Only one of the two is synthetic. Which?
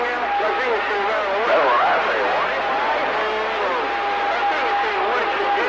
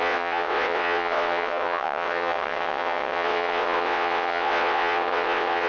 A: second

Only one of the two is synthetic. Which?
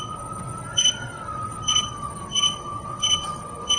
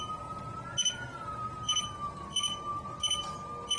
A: first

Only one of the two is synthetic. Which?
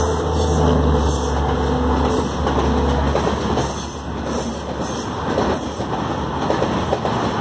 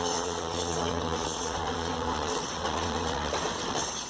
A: second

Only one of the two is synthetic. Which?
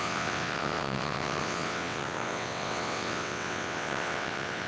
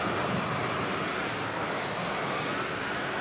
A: first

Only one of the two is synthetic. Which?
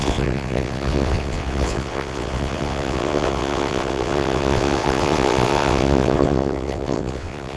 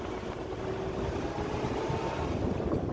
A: first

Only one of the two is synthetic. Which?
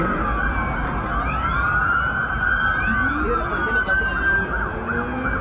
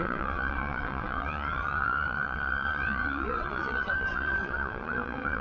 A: second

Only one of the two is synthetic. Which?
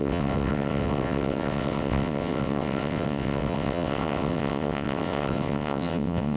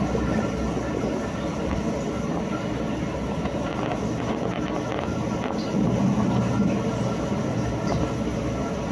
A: first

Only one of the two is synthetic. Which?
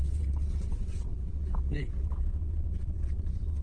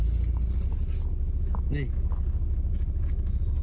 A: first